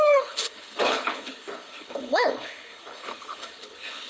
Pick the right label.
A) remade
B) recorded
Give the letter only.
A